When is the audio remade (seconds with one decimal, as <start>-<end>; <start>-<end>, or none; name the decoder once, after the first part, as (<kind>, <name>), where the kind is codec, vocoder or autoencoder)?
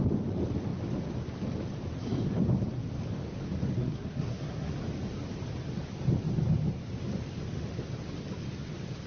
3.8-4.7 (codec, SNAC)